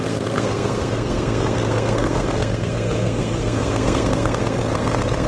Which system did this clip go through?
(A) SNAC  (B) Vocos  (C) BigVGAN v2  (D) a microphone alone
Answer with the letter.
A